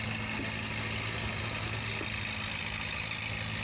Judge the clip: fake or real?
real